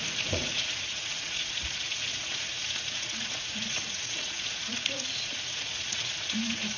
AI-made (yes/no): yes